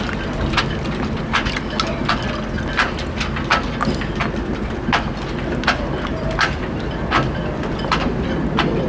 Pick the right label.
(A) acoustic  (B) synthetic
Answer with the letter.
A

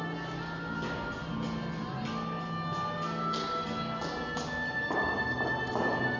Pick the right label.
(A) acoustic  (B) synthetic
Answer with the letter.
A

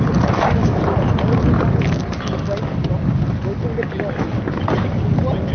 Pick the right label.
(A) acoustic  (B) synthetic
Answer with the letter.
A